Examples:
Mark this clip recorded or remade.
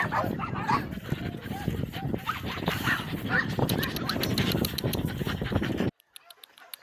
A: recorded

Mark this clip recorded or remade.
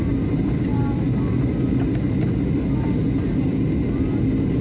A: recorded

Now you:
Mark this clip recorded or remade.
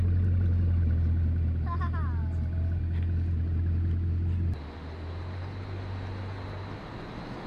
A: recorded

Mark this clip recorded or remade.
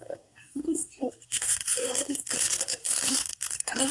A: remade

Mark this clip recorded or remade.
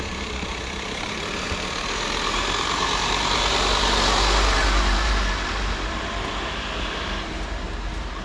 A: remade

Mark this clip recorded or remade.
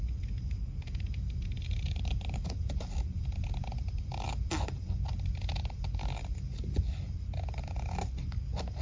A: recorded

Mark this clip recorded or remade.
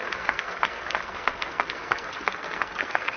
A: remade